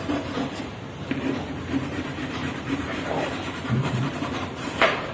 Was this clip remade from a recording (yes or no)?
yes